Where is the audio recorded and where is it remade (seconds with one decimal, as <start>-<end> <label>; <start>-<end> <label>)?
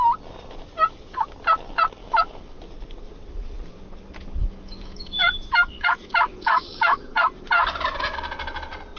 0.0-2.0 recorded; 2.0-2.6 remade; 2.6-4.4 recorded; 4.4-7.2 remade; 7.2-9.0 recorded